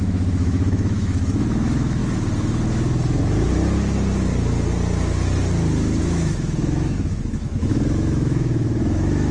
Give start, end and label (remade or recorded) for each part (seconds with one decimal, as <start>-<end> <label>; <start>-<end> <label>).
0.0-2.0 remade; 2.0-6.0 recorded; 6.0-9.3 remade